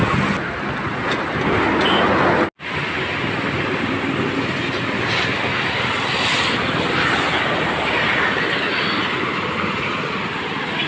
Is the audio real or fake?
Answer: real